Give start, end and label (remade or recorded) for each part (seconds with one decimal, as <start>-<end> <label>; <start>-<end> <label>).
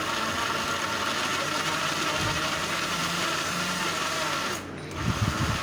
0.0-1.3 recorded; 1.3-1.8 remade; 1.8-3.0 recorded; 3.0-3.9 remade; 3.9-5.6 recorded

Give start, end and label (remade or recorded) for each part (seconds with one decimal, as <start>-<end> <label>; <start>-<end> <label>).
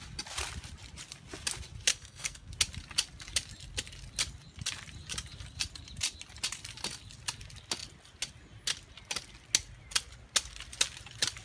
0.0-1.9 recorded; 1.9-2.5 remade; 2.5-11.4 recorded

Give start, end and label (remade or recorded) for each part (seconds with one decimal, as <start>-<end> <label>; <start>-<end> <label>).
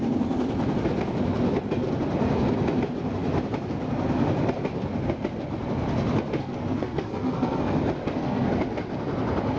0.0-6.4 recorded; 6.4-7.6 remade; 7.6-8.0 recorded; 8.0-8.5 remade; 8.5-9.6 recorded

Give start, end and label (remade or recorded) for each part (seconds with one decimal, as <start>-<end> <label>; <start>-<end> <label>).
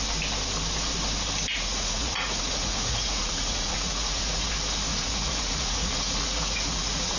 0.0-1.5 recorded; 1.5-4.5 remade; 4.5-4.9 recorded; 4.9-7.2 remade